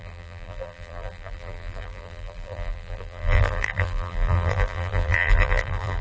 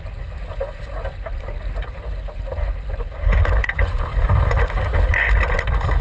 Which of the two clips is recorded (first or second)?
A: second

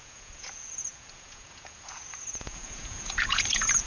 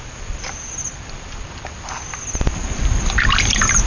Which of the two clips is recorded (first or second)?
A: second